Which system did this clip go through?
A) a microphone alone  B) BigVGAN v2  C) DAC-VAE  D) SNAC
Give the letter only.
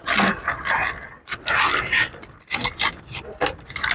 A